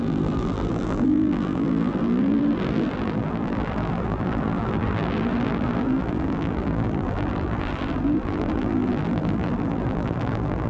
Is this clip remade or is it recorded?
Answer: remade